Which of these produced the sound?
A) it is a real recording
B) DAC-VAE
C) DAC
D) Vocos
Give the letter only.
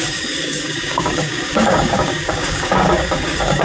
C